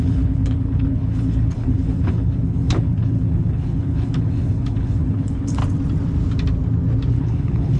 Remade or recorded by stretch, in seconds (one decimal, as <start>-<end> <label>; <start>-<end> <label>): 0.0-5.6 remade; 5.6-7.1 recorded; 7.1-7.8 remade